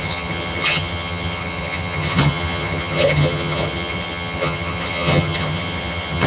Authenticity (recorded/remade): remade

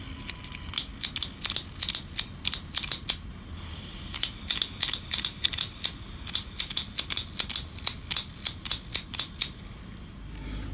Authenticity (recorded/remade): recorded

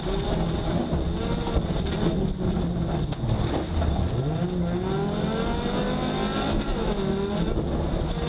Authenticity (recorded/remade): recorded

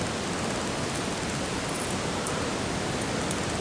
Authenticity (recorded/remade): recorded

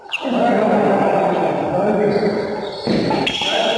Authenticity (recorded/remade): recorded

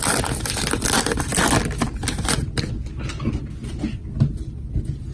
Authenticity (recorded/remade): recorded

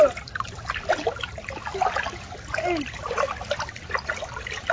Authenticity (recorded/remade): recorded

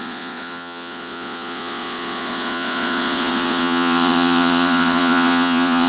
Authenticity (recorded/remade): remade